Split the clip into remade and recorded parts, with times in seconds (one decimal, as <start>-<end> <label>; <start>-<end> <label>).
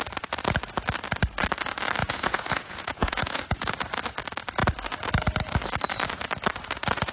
0.0-2.0 recorded; 2.0-3.7 remade; 3.7-7.1 recorded